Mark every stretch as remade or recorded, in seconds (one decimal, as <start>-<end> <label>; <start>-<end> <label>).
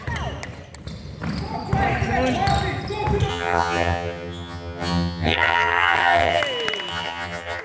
0.0-3.3 recorded; 3.3-6.4 remade; 6.4-6.9 recorded; 6.9-7.6 remade